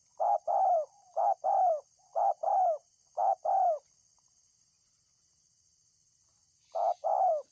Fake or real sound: real